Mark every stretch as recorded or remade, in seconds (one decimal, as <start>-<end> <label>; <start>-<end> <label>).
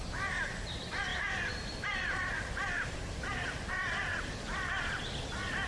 0.0-1.1 recorded; 1.1-3.7 remade; 3.7-5.7 recorded